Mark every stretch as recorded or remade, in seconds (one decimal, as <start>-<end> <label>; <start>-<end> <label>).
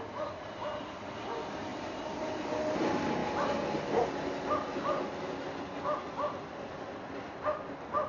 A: 0.0-1.7 recorded; 1.7-2.5 remade; 2.5-8.1 recorded